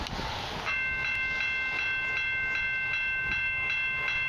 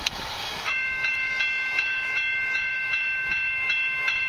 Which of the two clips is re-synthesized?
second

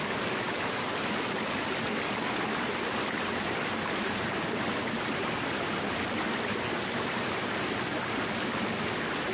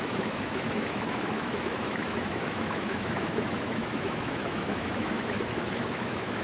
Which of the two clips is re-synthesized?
second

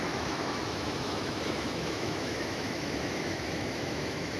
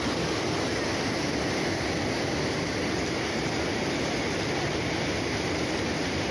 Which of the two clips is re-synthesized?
first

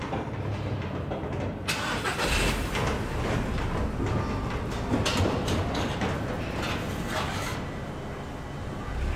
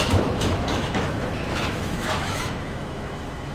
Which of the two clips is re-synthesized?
second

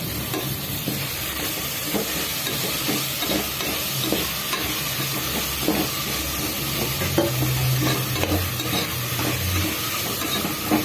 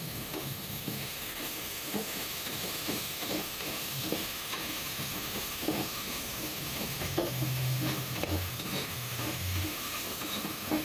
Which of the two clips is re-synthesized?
second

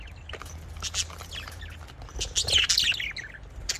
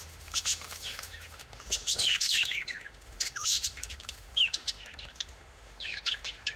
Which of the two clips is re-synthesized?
second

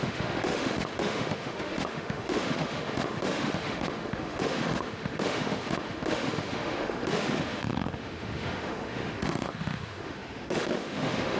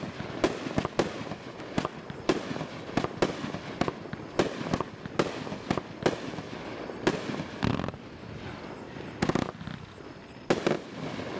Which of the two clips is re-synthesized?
first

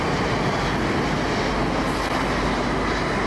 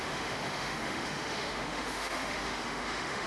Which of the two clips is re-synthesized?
second